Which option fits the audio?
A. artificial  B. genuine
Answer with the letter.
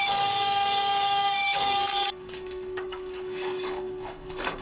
A